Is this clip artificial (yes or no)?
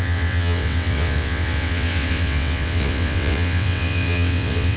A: yes